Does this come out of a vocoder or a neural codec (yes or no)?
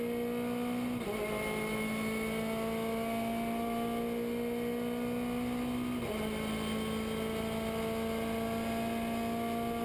no